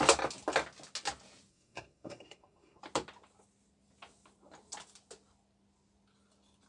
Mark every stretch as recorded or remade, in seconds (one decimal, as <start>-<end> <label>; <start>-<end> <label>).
0.0-1.5 recorded; 1.5-2.8 remade; 2.8-6.7 recorded